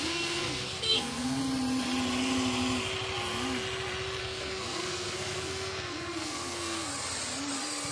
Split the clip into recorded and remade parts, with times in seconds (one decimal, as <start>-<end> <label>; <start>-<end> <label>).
0.0-1.4 remade; 1.4-4.2 recorded; 4.2-6.9 remade; 6.9-7.9 recorded